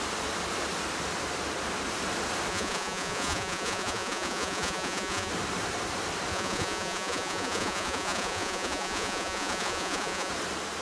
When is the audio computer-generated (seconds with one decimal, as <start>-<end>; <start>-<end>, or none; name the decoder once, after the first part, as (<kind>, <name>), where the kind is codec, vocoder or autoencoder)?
2.5-5.3 (vocoder, Vocos); 6.3-10.3